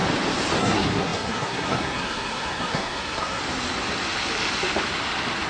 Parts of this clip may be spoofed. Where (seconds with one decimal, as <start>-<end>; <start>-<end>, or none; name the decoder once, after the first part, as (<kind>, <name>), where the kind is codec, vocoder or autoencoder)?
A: 0.6-3.4 (codec, SNAC)